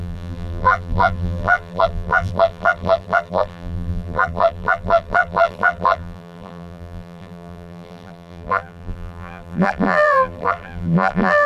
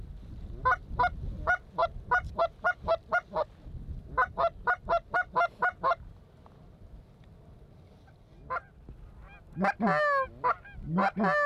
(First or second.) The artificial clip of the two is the first